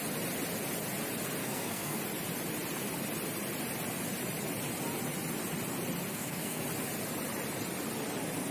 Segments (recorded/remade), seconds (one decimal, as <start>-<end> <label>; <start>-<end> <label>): 0.0-1.4 recorded; 1.4-2.0 remade; 2.0-6.1 recorded; 6.1-6.6 remade; 6.6-8.5 recorded